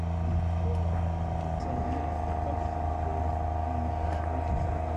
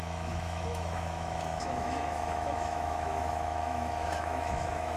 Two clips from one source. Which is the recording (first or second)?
first